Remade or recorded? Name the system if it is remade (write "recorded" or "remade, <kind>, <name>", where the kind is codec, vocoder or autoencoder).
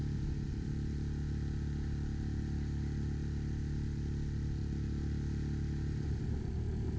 recorded